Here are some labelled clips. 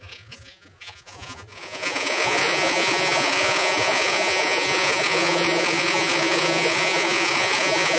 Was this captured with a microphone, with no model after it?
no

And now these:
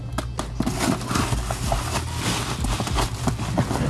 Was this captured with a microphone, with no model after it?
yes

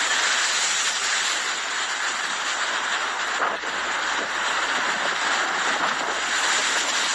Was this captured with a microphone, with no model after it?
yes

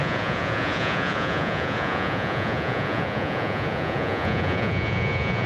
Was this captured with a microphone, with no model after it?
no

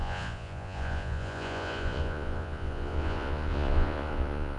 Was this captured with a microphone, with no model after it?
no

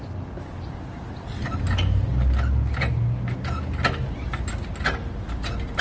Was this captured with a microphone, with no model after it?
yes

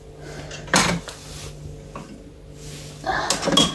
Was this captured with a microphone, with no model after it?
yes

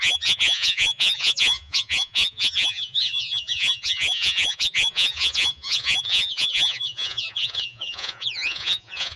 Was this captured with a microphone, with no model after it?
no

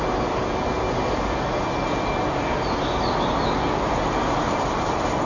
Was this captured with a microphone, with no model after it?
yes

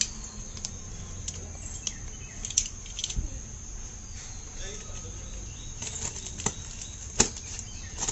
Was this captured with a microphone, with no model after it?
yes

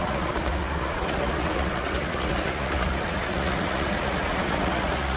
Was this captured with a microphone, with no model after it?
no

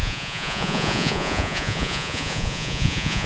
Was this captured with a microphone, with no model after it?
no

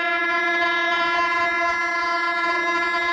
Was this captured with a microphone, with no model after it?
no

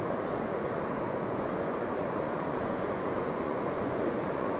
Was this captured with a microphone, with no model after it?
no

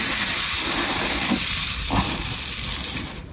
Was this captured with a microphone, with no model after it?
yes